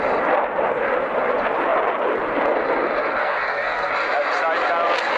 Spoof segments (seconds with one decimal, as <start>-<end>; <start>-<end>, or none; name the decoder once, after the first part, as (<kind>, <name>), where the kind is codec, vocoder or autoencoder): 3.2-3.9 (codec, SNAC)